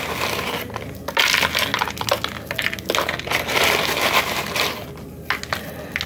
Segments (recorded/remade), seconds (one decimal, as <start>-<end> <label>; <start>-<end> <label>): 0.0-6.1 recorded